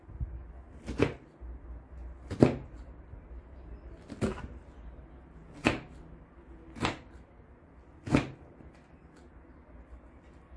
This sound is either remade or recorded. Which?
recorded